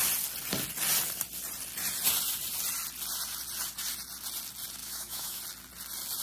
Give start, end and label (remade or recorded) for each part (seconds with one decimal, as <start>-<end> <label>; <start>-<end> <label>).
0.0-4.8 recorded; 4.8-5.4 remade; 5.4-6.2 recorded